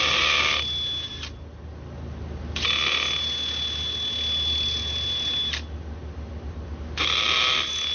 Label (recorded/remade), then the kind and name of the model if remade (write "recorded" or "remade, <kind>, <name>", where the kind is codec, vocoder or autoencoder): recorded